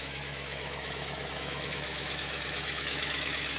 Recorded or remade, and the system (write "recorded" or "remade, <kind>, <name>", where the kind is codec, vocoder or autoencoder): remade, autoencoder, DAC-VAE